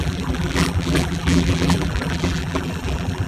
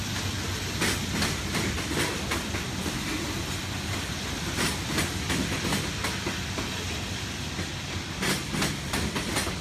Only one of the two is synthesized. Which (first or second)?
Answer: first